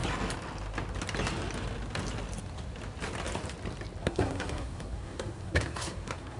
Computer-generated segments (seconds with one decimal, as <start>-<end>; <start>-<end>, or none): 4.0-6.4